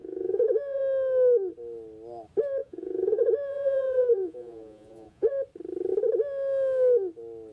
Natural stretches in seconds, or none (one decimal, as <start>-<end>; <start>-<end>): 0.8-2.6; 5.3-7.5